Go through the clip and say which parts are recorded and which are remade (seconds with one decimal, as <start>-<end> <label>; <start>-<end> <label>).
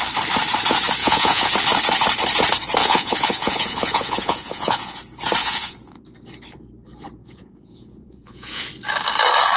0.0-1.0 recorded; 1.0-1.5 remade; 1.5-2.8 recorded; 2.8-5.0 remade; 5.0-5.4 recorded; 5.4-6.0 remade; 6.0-7.2 recorded; 7.2-8.7 remade; 8.7-9.6 recorded